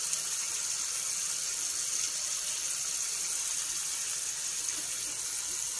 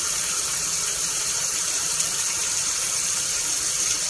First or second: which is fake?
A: second